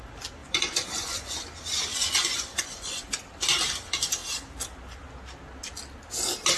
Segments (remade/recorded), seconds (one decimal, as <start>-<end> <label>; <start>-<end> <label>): 0.0-0.4 recorded; 0.4-1.4 remade; 1.4-1.9 recorded; 1.9-3.1 remade; 3.1-6.6 recorded